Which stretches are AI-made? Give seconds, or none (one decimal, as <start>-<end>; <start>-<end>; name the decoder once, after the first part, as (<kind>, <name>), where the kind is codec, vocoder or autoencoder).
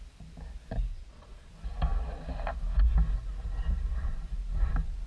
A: 0.9-1.5 (vocoder, Vocos)